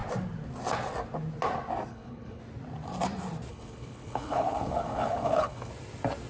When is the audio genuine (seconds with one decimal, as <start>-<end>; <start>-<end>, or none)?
0.0-1.9; 2.4-3.5; 5.7-6.3